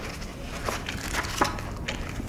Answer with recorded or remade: recorded